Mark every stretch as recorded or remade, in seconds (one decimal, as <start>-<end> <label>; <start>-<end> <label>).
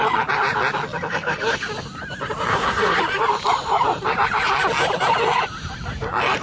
0.0-2.5 recorded; 2.5-3.0 remade; 3.0-6.4 recorded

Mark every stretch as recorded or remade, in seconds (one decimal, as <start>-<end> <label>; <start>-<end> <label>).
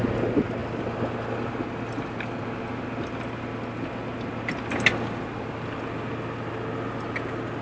0.0-7.6 recorded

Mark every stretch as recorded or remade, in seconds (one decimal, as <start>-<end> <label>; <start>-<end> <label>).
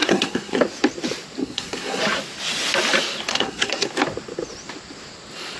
0.0-0.6 remade; 0.6-1.4 recorded; 1.4-2.0 remade; 2.0-3.3 recorded; 3.3-3.9 remade; 3.9-5.6 recorded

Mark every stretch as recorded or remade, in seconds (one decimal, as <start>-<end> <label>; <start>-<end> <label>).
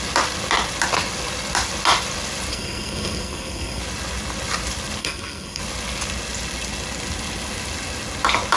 0.0-2.5 recorded; 2.5-3.8 remade; 3.8-5.0 recorded; 5.0-5.6 remade; 5.6-8.6 recorded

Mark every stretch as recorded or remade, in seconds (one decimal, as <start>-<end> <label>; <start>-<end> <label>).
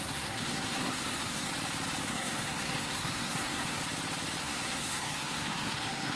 0.0-1.5 remade; 1.5-2.1 recorded; 2.1-3.8 remade; 3.8-4.4 recorded; 4.4-6.2 remade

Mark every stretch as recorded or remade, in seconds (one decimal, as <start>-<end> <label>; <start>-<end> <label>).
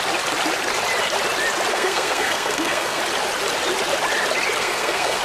0.0-1.7 recorded; 1.7-3.0 remade; 3.0-4.6 recorded; 4.6-5.2 remade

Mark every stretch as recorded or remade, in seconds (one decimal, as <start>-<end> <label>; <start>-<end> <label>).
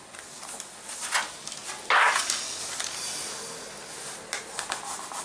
0.0-5.2 recorded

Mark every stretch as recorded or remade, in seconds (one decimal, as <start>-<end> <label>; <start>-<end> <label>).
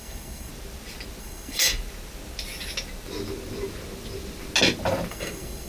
0.0-0.5 remade; 0.5-1.2 recorded; 1.2-1.7 remade; 1.7-5.1 recorded; 5.1-5.7 remade